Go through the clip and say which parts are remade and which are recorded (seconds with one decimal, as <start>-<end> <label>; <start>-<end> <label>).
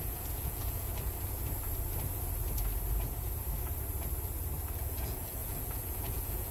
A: 0.0-0.9 remade; 0.9-4.8 recorded; 4.8-6.5 remade